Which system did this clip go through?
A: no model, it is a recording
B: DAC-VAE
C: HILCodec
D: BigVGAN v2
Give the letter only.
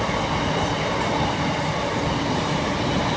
A